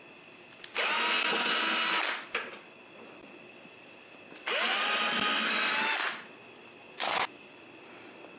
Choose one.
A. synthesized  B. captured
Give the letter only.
B